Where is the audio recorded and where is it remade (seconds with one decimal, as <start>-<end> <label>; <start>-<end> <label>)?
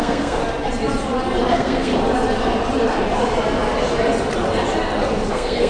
0.0-0.4 remade; 0.4-1.5 recorded; 1.5-1.9 remade; 1.9-5.3 recorded; 5.3-5.7 remade